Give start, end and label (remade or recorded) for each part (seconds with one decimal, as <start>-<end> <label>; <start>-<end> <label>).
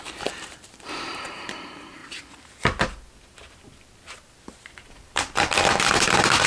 0.0-2.0 remade; 2.0-4.9 recorded; 4.9-6.5 remade